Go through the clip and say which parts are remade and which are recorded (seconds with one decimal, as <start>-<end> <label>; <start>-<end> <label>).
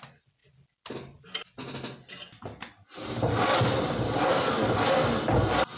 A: 0.0-5.8 recorded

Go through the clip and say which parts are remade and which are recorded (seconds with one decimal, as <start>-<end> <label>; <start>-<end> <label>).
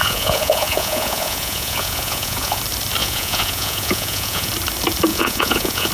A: 0.0-2.6 remade; 2.6-3.0 recorded; 3.0-4.5 remade; 4.5-5.1 recorded; 5.1-5.9 remade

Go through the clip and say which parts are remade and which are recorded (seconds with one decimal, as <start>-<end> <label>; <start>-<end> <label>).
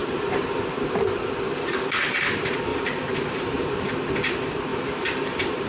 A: 0.0-0.7 remade; 0.7-2.7 recorded; 2.7-3.8 remade; 3.8-4.7 recorded; 4.7-5.7 remade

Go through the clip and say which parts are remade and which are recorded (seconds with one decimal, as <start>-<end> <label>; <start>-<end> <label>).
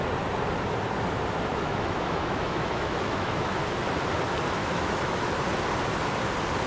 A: 0.0-1.5 recorded; 1.5-3.6 remade; 3.6-4.6 recorded; 4.6-5.2 remade; 5.2-6.7 recorded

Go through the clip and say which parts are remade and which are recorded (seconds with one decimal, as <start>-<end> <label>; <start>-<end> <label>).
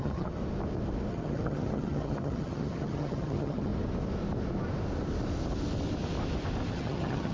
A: 0.0-0.4 remade; 0.4-1.1 recorded; 1.1-3.7 remade; 3.7-6.7 recorded; 6.7-7.3 remade